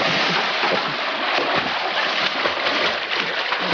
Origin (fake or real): real